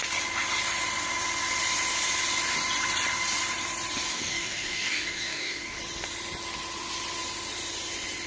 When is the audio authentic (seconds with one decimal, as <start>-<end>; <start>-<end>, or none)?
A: 0.0-4.1; 5.8-8.3